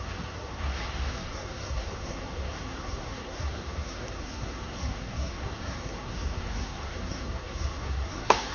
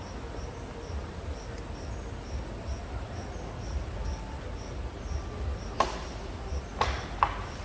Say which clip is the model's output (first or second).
first